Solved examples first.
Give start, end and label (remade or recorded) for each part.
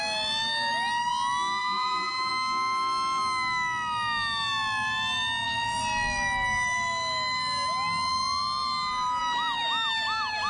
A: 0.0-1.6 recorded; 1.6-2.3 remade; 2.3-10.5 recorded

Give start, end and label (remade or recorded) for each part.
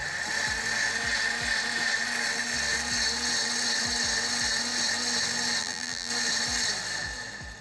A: 0.0-5.6 recorded; 5.6-6.1 remade; 6.1-7.6 recorded